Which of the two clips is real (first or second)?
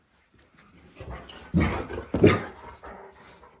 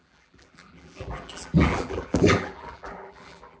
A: first